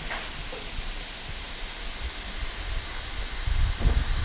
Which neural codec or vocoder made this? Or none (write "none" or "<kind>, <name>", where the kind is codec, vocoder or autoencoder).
none